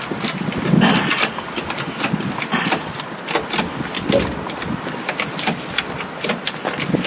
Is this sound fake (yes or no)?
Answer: no